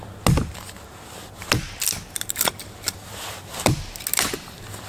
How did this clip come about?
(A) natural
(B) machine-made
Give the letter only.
A